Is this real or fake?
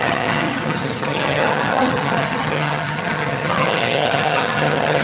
fake